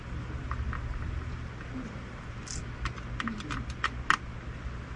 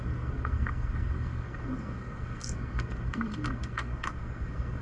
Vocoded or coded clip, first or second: second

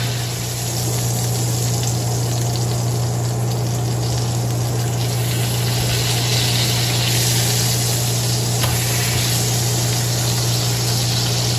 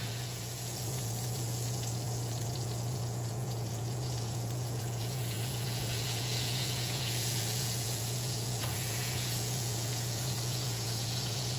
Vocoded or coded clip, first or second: second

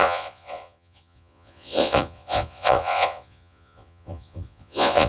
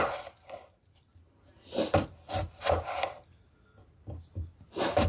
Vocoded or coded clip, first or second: first